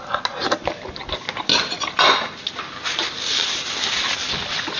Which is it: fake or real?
real